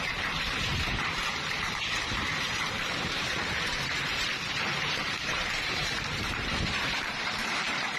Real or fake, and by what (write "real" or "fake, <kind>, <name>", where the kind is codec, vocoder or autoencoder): fake, vocoder, BigVGAN v2